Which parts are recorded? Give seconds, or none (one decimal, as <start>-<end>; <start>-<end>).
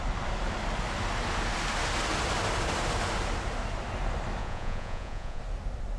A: 0.0-4.4; 5.4-6.0